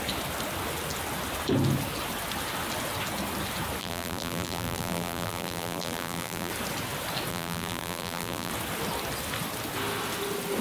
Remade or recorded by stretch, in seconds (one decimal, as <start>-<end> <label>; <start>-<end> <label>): 0.0-3.8 recorded; 3.8-6.5 remade; 6.5-7.3 recorded; 7.3-8.5 remade; 8.5-10.6 recorded